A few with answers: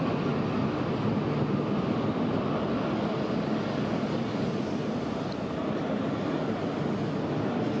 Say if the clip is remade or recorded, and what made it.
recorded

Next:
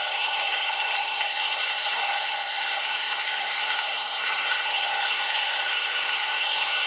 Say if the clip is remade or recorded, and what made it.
remade, codec, SNAC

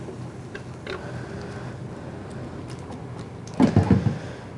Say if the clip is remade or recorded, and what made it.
recorded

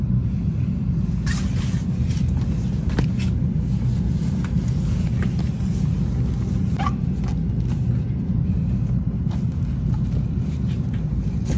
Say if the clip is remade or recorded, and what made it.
recorded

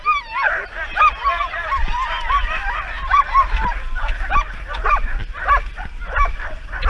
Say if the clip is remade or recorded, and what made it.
recorded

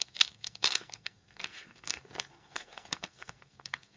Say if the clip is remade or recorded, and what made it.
remade, codec, SNAC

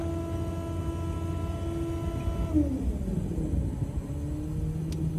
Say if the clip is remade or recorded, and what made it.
recorded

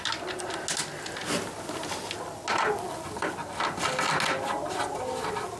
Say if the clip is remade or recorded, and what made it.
recorded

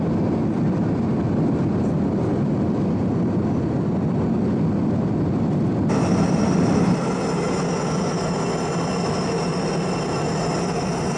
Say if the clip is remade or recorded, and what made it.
recorded